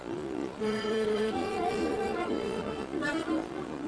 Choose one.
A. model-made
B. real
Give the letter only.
A